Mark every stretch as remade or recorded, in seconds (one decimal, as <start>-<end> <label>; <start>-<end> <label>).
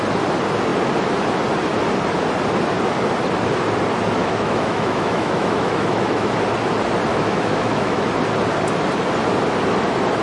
0.0-4.2 recorded; 4.2-6.3 remade; 6.3-7.1 recorded; 7.1-8.1 remade; 8.1-10.2 recorded